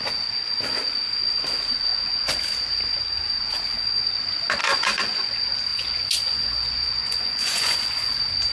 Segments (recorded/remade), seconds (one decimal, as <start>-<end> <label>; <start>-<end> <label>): 0.0-1.9 recorded; 1.9-2.4 remade; 2.4-4.6 recorded; 4.6-5.3 remade; 5.3-5.7 recorded; 5.7-8.1 remade; 8.1-8.5 recorded